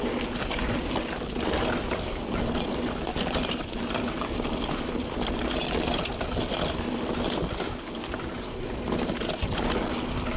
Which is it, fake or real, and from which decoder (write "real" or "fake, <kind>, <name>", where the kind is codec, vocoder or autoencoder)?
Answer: real